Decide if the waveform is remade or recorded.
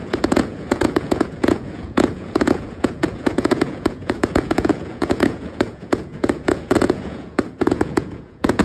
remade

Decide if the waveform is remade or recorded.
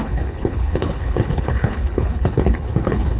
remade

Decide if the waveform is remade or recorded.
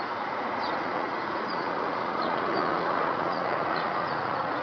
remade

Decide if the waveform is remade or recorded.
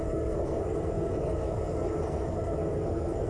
remade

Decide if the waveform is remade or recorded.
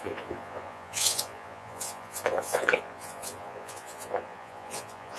remade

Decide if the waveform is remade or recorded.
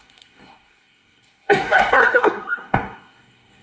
remade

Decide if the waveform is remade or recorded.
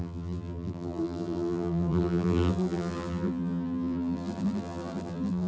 remade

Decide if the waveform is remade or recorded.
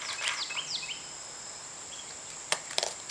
recorded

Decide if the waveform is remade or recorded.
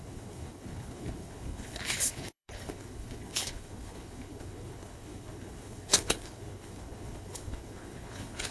remade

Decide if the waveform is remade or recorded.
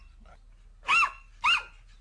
recorded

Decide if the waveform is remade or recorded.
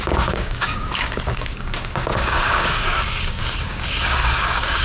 remade